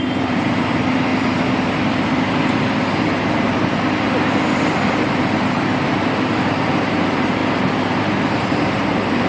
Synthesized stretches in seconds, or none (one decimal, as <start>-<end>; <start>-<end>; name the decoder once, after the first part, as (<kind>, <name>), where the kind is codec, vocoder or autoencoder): 0.0-1.1 (vocoder, BigVGAN v2); 5.2-5.7; 6.2-7.4; 8.4-9.3